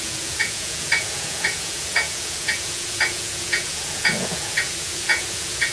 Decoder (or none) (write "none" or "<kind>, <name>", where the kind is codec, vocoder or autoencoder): vocoder, Vocos